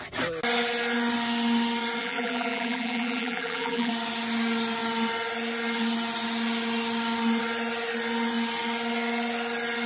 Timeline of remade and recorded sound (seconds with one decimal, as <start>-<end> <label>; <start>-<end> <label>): 0.0-2.0 recorded; 2.0-3.9 remade; 3.9-9.9 recorded